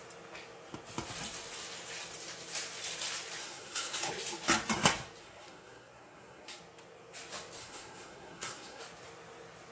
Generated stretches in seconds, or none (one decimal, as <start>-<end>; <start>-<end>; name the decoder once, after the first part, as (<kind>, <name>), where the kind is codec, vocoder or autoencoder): 3.4-4.1 (codec, SNAC); 5.2-6.6; 7.6-8.8